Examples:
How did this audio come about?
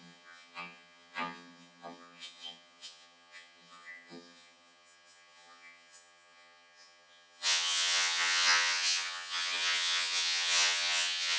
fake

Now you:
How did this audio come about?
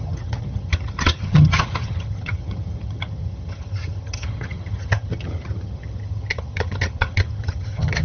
fake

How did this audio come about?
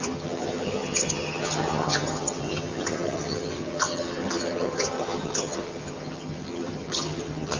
fake